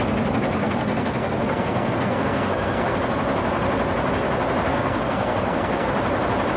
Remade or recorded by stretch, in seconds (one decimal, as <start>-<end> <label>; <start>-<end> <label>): 0.0-0.6 recorded; 0.6-3.0 remade; 3.0-4.7 recorded; 4.7-5.9 remade; 5.9-6.6 recorded